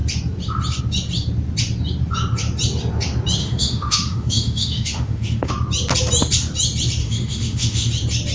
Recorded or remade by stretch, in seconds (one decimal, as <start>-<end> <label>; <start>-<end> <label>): 0.0-3.4 recorded; 3.4-5.5 remade; 5.5-7.0 recorded; 7.0-7.9 remade; 7.9-8.3 recorded